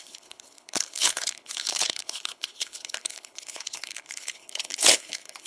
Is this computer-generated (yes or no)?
yes